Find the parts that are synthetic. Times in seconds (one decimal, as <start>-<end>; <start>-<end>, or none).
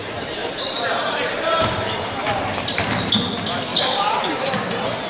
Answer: 0.4-3.1; 3.7-5.1